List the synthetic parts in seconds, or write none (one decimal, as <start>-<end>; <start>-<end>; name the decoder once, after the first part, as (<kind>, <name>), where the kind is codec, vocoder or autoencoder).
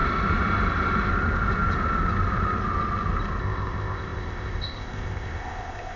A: 3.4-6.0 (codec, ZipCodec)